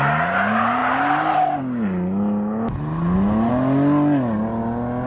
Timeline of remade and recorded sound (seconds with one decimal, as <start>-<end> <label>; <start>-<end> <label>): 0.0-5.1 recorded